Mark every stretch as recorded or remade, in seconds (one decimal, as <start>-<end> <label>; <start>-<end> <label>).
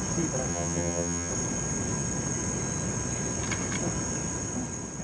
0.0-0.5 recorded; 0.5-1.3 remade; 1.3-5.0 recorded